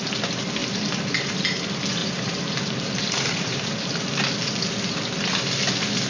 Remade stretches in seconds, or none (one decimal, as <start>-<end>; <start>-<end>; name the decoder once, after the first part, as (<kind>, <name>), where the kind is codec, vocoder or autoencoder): 0.6-1.4 (vocoder, BigVGAN v2); 2.0-3.6